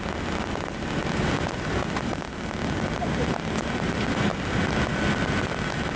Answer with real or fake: real